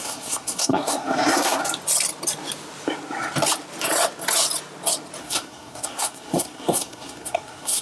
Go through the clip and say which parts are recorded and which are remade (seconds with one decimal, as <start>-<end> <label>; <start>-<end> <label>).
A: 0.0-1.6 remade; 1.6-5.2 recorded; 5.2-7.8 remade

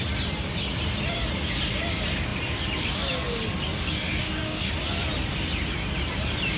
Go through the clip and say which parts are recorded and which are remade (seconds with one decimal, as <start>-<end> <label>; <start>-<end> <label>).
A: 0.0-4.2 recorded; 4.2-4.7 remade; 4.7-6.6 recorded

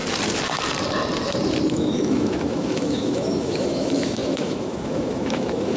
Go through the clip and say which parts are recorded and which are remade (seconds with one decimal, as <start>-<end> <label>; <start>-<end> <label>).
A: 0.0-1.7 recorded; 1.7-5.8 remade

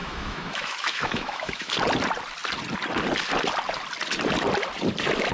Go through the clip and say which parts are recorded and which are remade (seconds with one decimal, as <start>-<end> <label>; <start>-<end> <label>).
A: 0.0-1.7 remade; 1.7-5.3 recorded

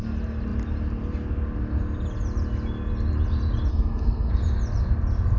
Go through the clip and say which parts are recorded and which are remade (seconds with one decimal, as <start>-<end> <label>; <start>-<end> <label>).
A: 0.0-3.7 recorded; 3.7-4.3 remade; 4.3-5.4 recorded

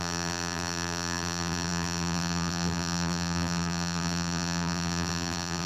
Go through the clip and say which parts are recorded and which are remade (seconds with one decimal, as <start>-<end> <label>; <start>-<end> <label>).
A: 0.0-5.7 remade

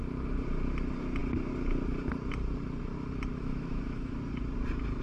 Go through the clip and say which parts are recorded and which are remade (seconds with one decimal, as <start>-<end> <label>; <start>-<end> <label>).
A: 0.0-3.3 recorded; 3.3-4.2 remade; 4.2-5.0 recorded

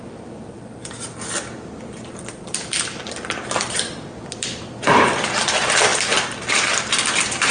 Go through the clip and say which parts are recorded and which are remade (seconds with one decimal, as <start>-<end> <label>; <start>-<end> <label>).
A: 0.0-7.5 remade